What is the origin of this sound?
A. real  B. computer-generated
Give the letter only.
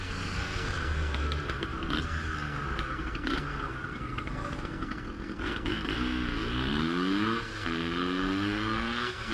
B